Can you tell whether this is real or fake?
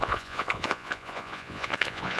fake